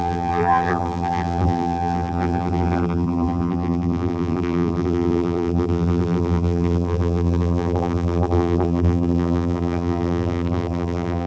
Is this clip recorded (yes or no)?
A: no